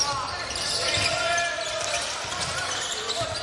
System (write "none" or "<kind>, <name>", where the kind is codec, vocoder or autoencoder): none